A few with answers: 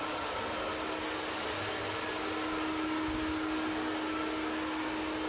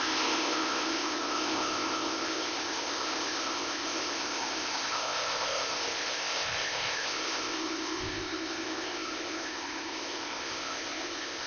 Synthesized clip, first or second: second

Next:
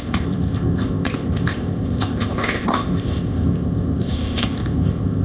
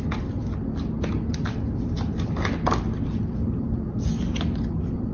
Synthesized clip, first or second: first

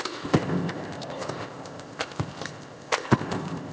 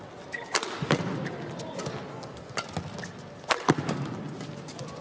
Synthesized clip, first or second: first